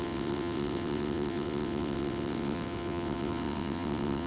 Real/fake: fake